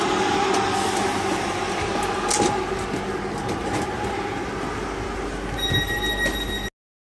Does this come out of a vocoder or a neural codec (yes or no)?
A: no